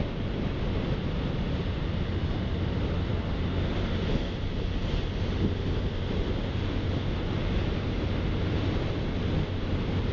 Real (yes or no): yes